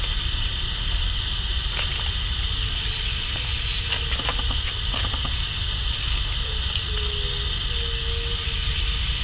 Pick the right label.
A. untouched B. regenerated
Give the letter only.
A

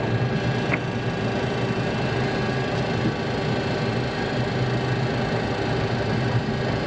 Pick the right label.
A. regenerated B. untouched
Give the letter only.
B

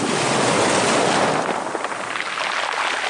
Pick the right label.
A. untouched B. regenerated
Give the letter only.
A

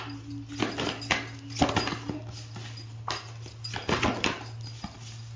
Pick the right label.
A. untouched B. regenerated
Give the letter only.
A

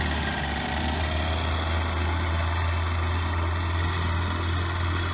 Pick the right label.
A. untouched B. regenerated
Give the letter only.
A